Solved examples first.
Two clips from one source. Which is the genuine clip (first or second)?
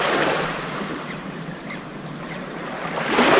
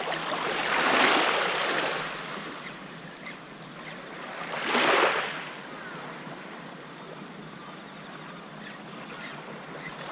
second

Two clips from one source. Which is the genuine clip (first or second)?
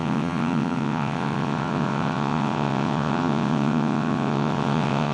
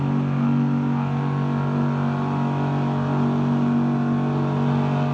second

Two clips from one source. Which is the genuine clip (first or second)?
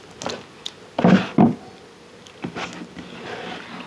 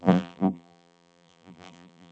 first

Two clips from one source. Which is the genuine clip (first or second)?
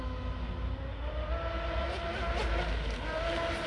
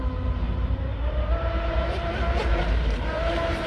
first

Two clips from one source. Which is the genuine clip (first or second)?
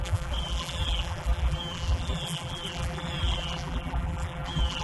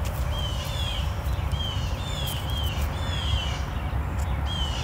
second